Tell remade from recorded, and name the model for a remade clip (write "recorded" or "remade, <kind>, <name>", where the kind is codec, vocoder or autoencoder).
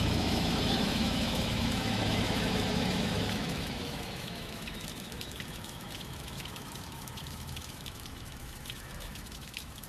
remade, autoencoder, DAC-VAE